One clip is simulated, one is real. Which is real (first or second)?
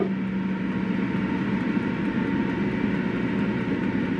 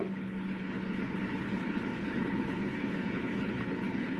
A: first